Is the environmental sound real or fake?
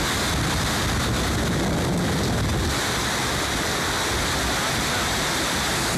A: real